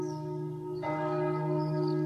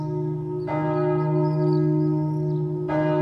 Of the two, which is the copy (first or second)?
first